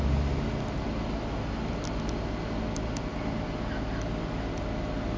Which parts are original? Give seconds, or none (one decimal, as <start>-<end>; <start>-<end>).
0.0-5.2